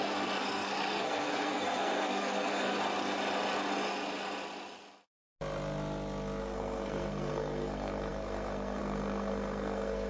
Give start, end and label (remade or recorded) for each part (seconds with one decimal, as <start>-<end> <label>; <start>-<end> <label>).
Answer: 0.0-2.8 remade; 2.8-6.4 recorded; 6.4-10.1 remade